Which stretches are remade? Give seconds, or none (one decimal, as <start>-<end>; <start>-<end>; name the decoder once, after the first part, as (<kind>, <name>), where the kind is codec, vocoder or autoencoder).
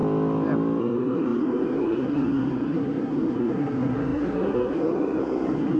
0.8-5.8 (codec, SNAC)